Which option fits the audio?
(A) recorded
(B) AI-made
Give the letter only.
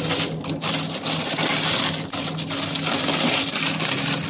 A